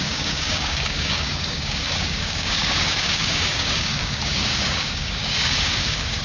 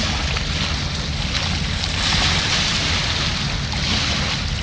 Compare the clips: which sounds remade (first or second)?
first